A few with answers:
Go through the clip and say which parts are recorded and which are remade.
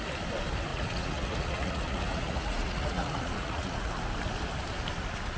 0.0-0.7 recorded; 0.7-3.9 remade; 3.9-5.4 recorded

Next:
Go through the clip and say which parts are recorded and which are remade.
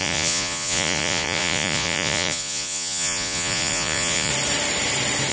0.0-4.3 remade; 4.3-5.3 recorded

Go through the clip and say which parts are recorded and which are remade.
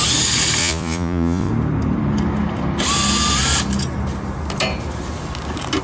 0.0-0.6 recorded; 0.6-1.5 remade; 1.5-5.8 recorded